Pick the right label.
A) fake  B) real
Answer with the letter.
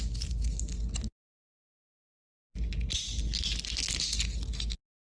B